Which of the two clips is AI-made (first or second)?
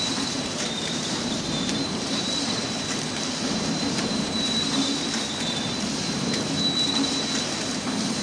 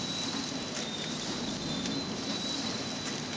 first